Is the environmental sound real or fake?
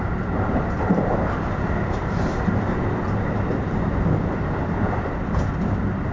real